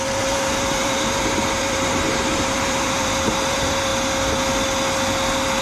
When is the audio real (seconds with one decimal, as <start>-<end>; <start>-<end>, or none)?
3.9-5.6